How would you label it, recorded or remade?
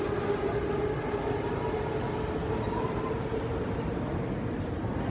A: recorded